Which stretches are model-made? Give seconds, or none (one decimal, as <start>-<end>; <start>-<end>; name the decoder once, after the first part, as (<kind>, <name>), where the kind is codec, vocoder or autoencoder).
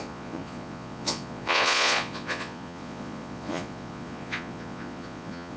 0.0-5.6 (vocoder, Vocos)